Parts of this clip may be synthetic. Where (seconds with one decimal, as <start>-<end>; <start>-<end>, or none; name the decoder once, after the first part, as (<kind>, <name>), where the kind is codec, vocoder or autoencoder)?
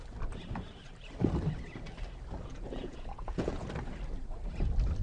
2.5-3.7 (vocoder, Vocos)